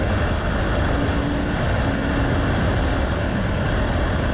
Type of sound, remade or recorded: recorded